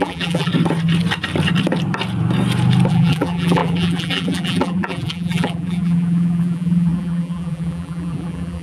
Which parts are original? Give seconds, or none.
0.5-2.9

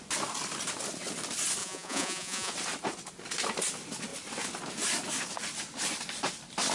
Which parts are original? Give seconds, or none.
0.0-1.6; 2.5-6.7